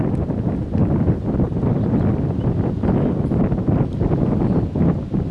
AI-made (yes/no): no